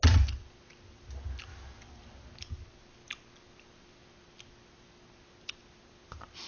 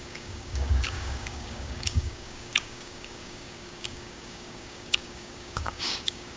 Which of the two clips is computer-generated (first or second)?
second